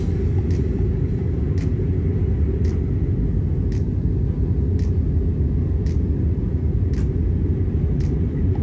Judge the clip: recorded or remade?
recorded